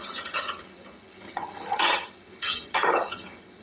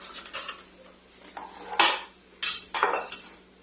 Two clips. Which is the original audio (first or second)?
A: second